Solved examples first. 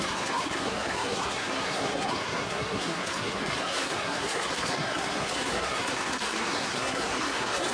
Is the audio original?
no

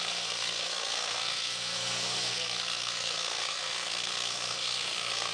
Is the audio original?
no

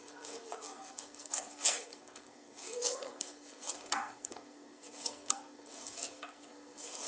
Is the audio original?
no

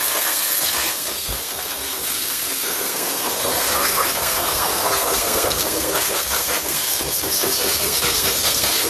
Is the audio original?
no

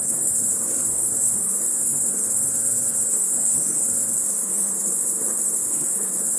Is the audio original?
no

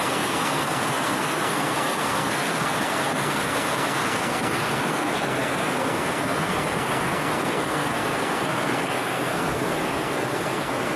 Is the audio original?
no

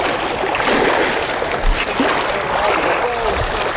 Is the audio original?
yes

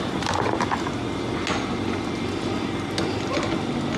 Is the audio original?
yes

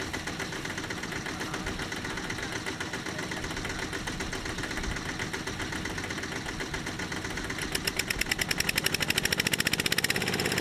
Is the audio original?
yes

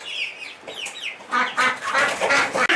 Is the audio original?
yes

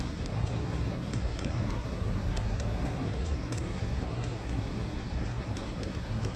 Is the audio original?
no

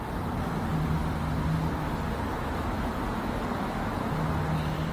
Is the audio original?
yes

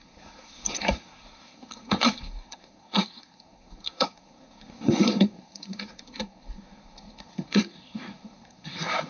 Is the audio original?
no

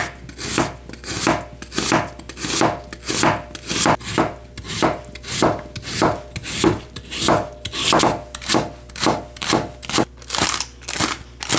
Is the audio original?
yes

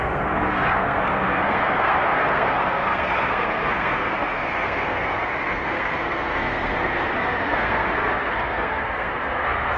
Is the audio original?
no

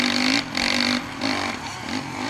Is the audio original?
yes